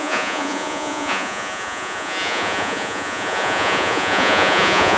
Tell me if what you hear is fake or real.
fake